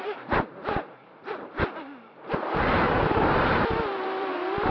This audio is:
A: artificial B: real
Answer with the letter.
A